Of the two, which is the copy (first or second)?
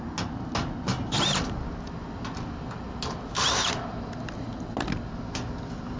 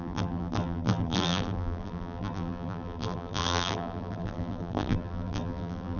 second